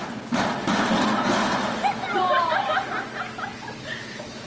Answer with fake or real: real